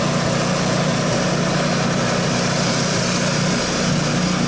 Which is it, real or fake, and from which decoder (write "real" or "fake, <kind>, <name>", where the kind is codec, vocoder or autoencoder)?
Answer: real